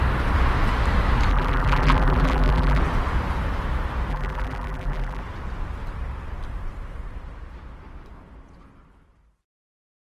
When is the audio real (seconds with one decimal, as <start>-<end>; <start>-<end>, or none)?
0.0-1.3; 2.8-4.1; 5.2-10.0